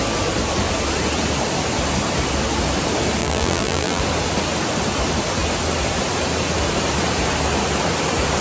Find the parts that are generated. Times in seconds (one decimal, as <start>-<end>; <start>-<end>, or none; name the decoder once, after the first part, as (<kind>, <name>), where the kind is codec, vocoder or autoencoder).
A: 3.2-4.0 (vocoder, BigVGAN v2)